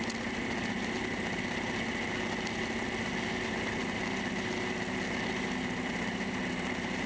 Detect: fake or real real